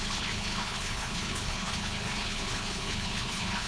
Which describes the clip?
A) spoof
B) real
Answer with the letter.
A